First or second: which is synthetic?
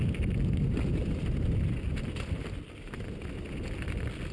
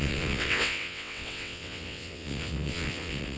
second